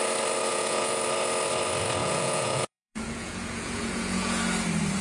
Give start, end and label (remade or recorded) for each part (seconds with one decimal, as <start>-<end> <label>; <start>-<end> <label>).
0.0-0.5 recorded; 0.5-1.0 remade; 1.0-2.0 recorded; 2.0-4.4 remade; 4.4-5.0 recorded